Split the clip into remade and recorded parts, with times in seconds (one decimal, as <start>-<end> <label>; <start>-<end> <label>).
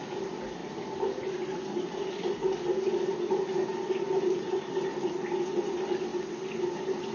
0.0-7.1 recorded